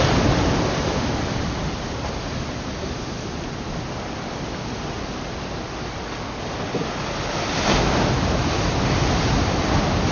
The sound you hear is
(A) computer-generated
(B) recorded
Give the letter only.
B